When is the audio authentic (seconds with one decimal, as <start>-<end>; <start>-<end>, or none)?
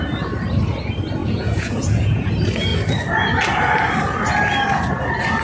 0.0-1.2; 2.3-5.4